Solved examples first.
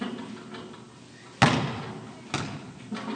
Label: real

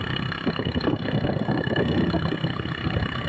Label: fake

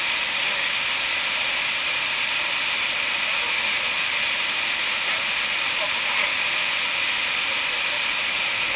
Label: real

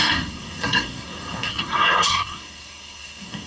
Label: fake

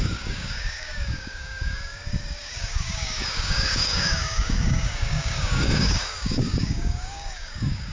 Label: fake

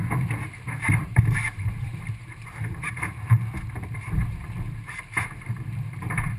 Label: fake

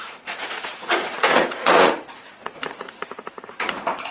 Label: fake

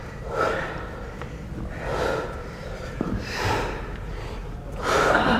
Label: fake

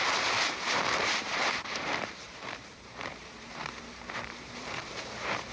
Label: fake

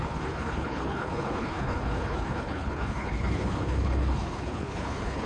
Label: fake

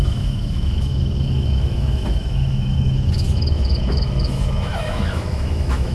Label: fake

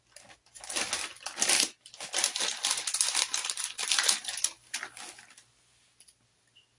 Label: real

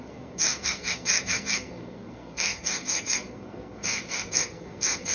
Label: fake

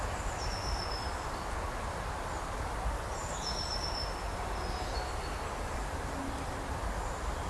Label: real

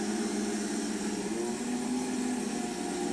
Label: real